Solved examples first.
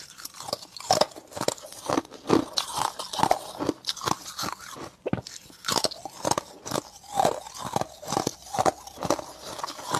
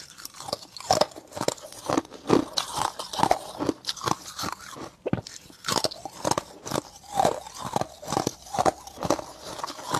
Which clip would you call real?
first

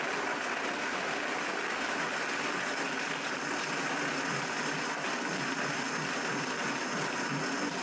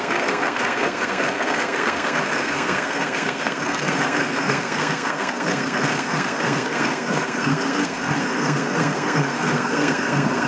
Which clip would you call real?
first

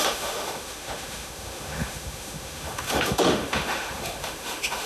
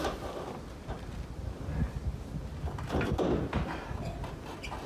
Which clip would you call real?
second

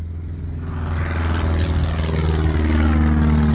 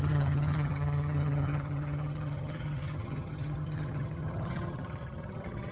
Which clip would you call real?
first